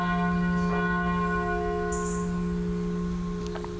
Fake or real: real